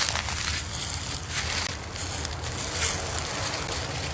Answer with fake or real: real